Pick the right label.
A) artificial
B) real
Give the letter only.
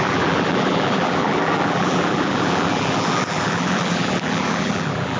A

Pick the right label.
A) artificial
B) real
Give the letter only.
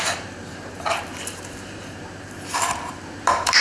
A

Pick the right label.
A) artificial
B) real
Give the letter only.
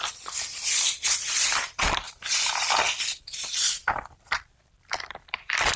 A